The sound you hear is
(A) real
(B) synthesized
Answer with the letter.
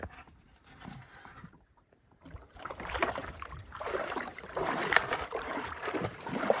B